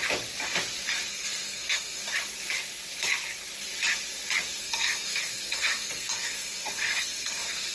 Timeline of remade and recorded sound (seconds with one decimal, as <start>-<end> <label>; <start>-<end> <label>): 0.0-1.1 recorded; 1.1-2.0 remade; 2.0-4.6 recorded; 4.6-7.7 remade